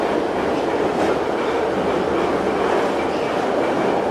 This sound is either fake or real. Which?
real